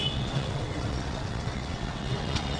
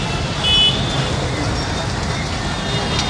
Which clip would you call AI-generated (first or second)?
first